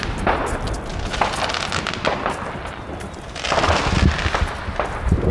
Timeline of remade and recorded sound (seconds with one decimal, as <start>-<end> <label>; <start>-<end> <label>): 0.0-5.3 recorded